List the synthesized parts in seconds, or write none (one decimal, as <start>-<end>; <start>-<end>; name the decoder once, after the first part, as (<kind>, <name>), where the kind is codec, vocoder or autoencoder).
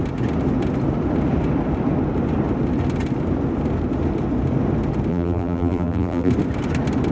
5.1-6.3 (vocoder, BigVGAN v2)